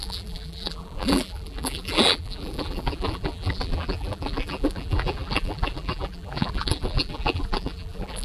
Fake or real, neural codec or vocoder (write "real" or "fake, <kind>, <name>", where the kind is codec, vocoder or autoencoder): fake, vocoder, BigVGAN v2